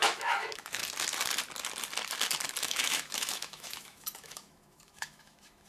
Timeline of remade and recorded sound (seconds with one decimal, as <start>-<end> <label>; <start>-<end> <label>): 0.0-0.8 remade; 0.8-2.6 recorded; 2.6-5.7 remade

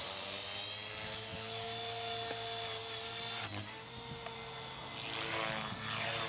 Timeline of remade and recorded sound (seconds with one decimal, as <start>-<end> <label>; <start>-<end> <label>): 0.0-6.3 recorded

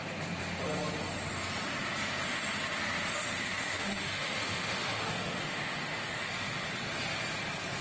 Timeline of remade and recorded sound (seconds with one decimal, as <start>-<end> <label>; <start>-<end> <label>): 0.0-3.1 recorded; 3.1-6.3 remade; 6.3-7.8 recorded

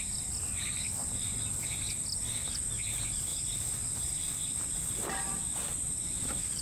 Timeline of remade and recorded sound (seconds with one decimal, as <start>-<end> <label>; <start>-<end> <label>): 0.0-6.6 recorded

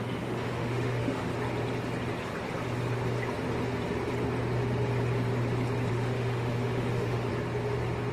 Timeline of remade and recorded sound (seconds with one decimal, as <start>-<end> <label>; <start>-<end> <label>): 0.0-1.3 remade; 1.3-5.9 recorded; 5.9-7.3 remade; 7.3-8.1 recorded

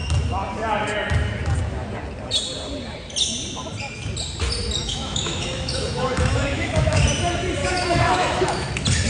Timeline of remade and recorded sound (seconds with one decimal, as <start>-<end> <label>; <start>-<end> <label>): 0.0-4.8 recorded; 4.8-7.0 remade; 7.0-7.6 recorded; 7.6-8.7 remade; 8.7-9.1 recorded

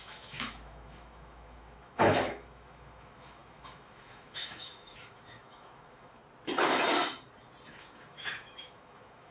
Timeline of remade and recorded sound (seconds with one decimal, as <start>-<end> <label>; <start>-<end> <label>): 0.0-6.2 remade; 6.2-7.7 recorded; 7.7-9.3 remade